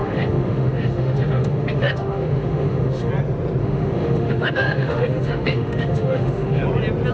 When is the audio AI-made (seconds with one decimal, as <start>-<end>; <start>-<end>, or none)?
0.0-3.1; 3.6-6.6